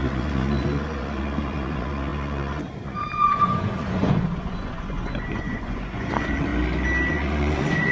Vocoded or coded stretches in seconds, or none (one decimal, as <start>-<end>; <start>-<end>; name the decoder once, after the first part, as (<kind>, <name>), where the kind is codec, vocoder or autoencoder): 0.0-6.5 (vocoder, Vocos); 7.1-7.9